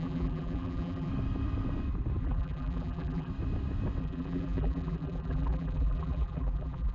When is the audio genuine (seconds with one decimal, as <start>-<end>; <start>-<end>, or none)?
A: 1.1-2.2; 3.3-4.0